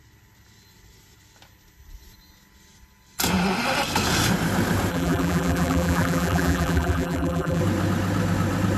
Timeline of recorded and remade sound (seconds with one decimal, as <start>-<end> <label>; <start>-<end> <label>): 0.0-4.9 recorded; 4.9-7.6 remade; 7.6-8.8 recorded